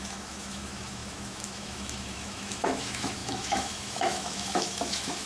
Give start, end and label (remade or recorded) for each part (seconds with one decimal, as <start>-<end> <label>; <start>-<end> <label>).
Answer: 0.0-5.3 remade